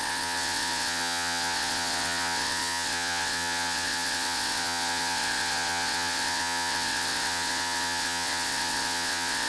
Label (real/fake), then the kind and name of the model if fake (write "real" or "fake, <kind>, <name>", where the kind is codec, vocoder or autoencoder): fake, vocoder, WaveNeXt